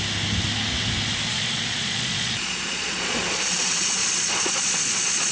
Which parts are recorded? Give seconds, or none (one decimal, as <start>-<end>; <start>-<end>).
0.0-1.3; 3.4-4.0